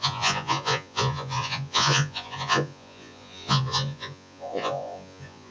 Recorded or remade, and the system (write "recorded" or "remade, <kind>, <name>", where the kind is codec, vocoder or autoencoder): remade, vocoder, Vocos